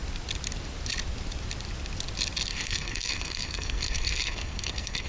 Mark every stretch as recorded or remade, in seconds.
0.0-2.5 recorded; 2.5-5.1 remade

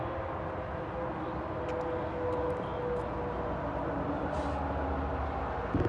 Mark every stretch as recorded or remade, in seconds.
0.0-5.9 recorded

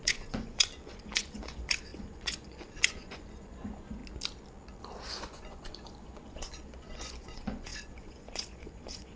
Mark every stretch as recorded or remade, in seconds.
0.0-4.0 remade; 4.0-5.1 recorded; 5.1-9.2 remade

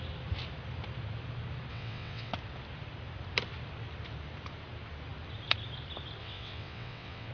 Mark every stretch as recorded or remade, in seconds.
0.0-1.7 recorded; 1.7-2.3 remade; 2.3-6.2 recorded; 6.2-7.3 remade

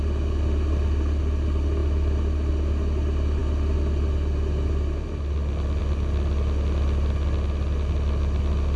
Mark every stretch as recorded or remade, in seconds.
0.0-8.8 recorded

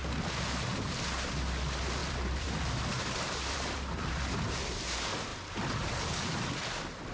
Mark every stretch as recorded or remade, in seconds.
0.0-2.0 recorded; 2.0-4.2 remade; 4.2-5.3 recorded; 5.3-6.4 remade; 6.4-7.1 recorded

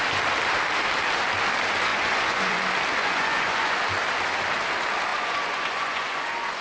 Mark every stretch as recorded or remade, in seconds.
0.0-1.9 recorded; 1.9-2.6 remade; 2.6-3.0 recorded; 3.0-3.8 remade; 3.8-5.1 recorded; 5.1-6.6 remade